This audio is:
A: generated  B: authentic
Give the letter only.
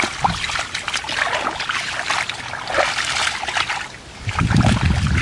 B